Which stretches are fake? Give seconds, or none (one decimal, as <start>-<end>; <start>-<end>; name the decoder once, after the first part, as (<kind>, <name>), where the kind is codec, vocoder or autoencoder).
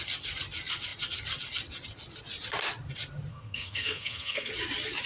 3.3-4.5 (codec, SNAC)